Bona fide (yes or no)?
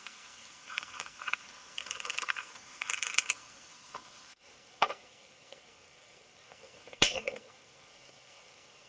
no